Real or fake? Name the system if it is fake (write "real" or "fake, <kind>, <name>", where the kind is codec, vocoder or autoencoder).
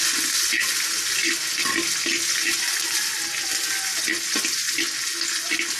real